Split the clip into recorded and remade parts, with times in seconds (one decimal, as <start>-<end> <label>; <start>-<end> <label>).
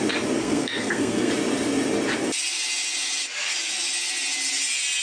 0.0-0.4 recorded; 0.4-1.3 remade; 1.3-5.0 recorded